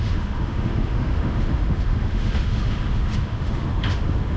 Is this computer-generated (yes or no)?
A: yes